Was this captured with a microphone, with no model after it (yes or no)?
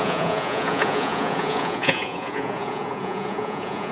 no